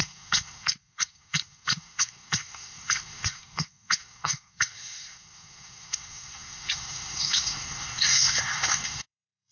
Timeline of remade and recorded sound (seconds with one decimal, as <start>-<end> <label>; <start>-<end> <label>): 0.0-9.5 remade